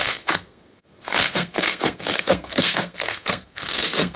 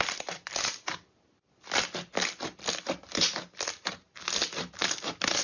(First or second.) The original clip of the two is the second